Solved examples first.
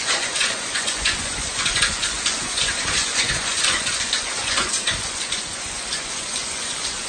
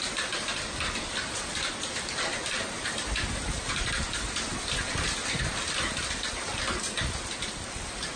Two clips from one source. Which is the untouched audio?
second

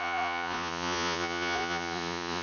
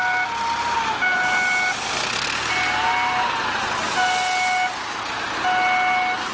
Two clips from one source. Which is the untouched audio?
second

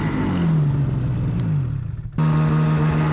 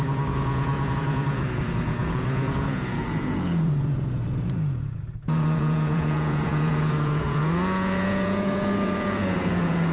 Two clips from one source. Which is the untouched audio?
first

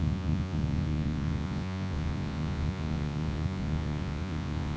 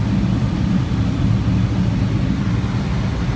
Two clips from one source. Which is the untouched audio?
second